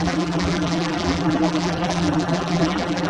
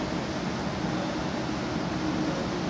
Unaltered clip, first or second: second